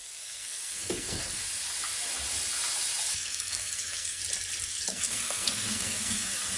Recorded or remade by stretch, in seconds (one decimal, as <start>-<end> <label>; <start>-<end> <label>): 0.0-1.4 remade; 1.4-3.1 recorded; 3.1-4.2 remade; 4.2-4.7 recorded; 4.7-6.6 remade